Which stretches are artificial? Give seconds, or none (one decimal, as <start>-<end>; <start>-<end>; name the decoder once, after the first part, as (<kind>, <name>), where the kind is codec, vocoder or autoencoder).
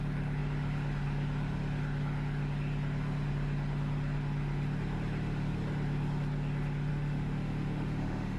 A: 6.9-8.4 (autoencoder, DAC-VAE)